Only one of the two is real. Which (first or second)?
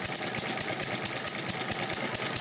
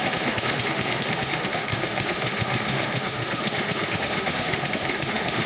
first